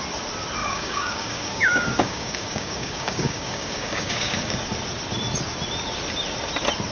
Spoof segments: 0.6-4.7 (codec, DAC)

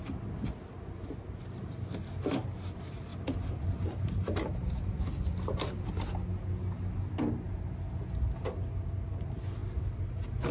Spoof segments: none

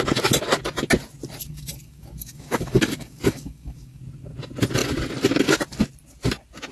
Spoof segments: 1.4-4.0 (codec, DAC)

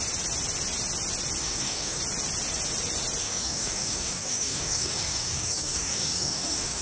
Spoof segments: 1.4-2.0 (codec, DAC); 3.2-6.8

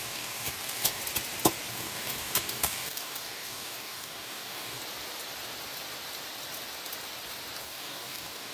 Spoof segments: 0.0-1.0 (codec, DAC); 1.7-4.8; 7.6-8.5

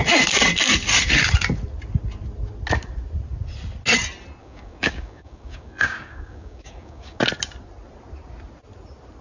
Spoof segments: 4.4-7.2 (codec, DAC)